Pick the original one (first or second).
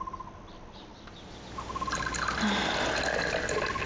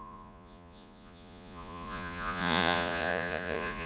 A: first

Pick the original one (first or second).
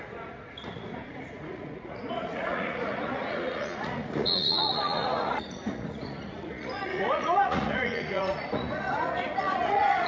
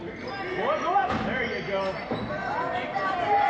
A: second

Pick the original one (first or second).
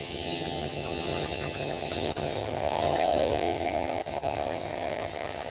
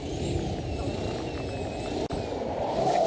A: second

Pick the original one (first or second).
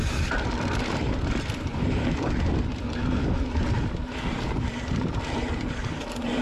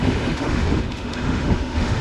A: first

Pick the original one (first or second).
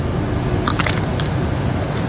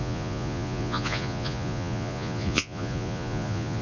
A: first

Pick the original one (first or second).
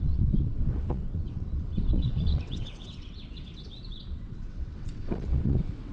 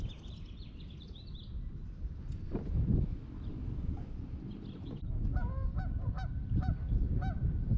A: second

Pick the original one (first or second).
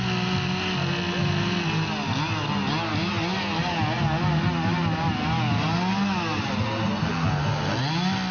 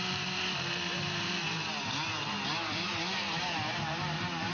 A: first